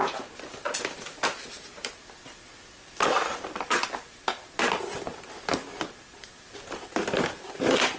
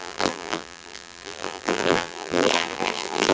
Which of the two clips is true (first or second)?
first